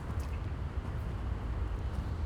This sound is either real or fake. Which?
real